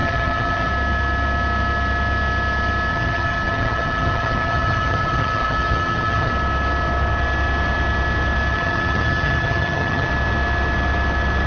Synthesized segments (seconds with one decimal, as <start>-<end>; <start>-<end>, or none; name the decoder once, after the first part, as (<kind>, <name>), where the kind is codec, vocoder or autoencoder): 0.0-0.7 (vocoder, HiFi-GAN); 2.9-6.3; 8.5-10.1